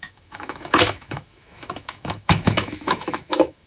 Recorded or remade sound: remade